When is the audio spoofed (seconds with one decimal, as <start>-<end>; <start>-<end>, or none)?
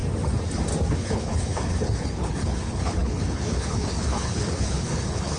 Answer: 0.9-5.4